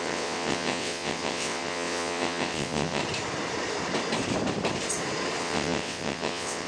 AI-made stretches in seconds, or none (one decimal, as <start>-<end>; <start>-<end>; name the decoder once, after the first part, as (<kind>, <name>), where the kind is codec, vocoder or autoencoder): 0.0-3.0 (vocoder, WaveNeXt); 5.4-6.7

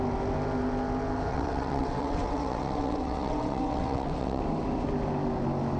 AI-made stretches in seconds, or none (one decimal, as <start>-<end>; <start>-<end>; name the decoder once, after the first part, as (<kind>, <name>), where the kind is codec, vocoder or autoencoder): 1.3-4.4 (vocoder, WaveNeXt)

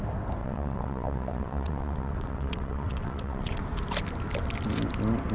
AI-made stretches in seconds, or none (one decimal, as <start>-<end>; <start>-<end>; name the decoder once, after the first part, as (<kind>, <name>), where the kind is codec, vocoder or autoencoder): 0.4-3.6 (vocoder, WaveNeXt)

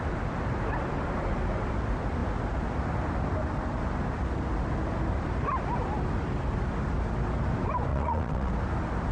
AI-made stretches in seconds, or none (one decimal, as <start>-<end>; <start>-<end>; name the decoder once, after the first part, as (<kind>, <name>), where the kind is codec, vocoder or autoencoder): 7.9-8.5 (vocoder, WaveNeXt)